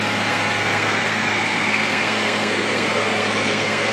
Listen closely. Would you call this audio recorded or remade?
remade